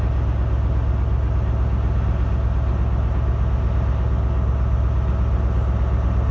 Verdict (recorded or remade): recorded